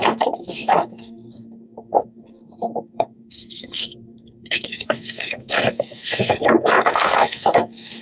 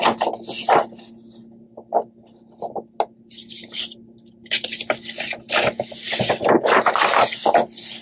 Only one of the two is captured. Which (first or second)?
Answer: second